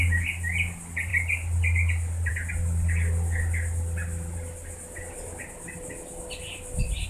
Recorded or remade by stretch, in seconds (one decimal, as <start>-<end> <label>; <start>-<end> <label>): 0.0-7.1 recorded

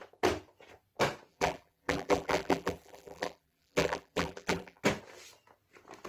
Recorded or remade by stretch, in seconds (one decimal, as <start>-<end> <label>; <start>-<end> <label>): 0.0-1.3 recorded; 1.3-4.8 remade; 4.8-6.1 recorded